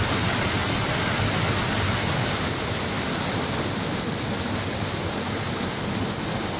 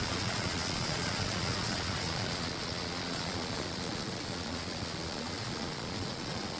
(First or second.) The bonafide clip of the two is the first